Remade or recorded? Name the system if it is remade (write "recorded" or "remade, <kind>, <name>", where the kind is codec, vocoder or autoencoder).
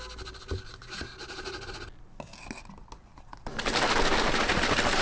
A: recorded